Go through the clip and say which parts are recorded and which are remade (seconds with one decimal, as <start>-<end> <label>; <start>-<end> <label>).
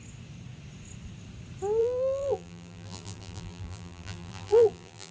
0.0-1.8 recorded; 1.8-5.1 remade